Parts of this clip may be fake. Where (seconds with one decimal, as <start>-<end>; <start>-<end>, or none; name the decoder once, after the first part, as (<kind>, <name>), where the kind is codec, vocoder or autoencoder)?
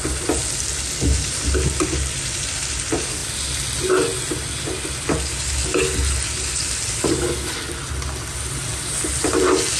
none